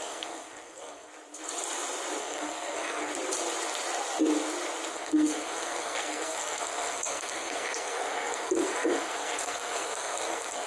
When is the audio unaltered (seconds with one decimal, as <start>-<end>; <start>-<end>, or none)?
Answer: 1.1-2.2; 3.1-4.9

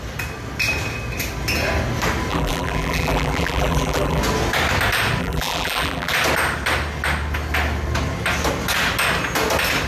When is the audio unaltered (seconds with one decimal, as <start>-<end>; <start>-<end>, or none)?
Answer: 0.0-2.3; 4.2-5.2; 6.1-9.9

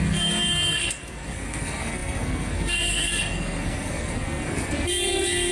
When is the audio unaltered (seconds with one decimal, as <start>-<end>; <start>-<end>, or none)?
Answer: none